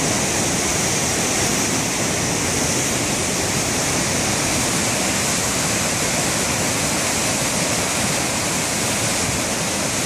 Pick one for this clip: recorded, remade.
recorded